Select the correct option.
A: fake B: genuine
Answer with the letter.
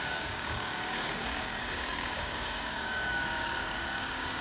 A